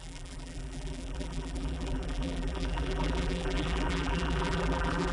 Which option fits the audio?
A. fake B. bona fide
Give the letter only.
A